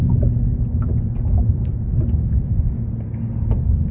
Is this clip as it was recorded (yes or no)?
yes